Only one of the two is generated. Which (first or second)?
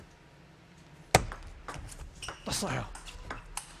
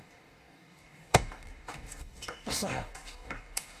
second